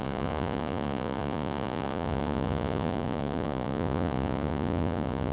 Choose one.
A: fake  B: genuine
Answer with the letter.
A